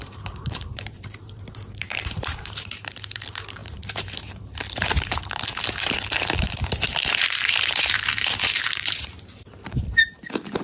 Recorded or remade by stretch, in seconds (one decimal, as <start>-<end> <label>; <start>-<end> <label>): 0.0-10.6 remade